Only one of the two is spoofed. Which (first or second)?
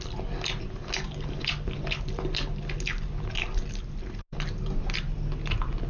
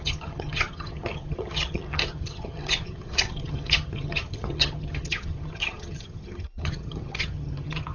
second